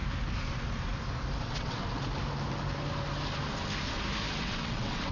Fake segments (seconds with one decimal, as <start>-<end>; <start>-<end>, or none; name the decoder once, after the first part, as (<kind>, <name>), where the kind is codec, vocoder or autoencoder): 1.4-1.8 (vocoder, WaveNeXt); 4.4-5.1